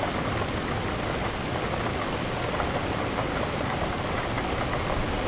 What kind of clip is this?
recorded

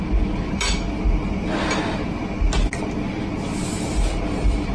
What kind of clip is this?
recorded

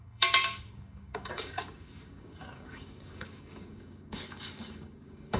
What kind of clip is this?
remade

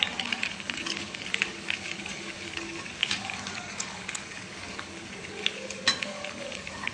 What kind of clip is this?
remade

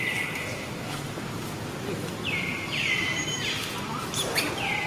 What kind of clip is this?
recorded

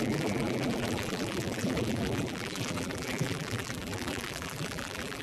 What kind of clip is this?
remade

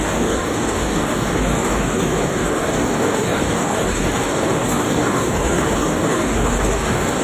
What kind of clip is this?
remade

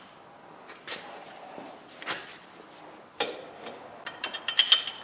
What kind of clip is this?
recorded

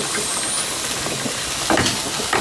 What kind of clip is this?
recorded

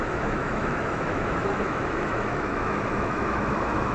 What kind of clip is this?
remade